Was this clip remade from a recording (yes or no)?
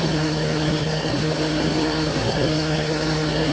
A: yes